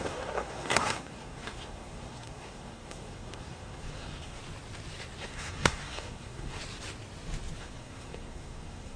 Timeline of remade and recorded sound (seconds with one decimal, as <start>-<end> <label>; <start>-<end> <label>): 0.0-4.4 remade; 4.4-5.2 recorded; 5.2-6.6 remade; 6.6-7.6 recorded; 7.6-9.0 remade